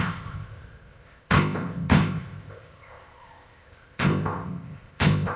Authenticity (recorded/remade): remade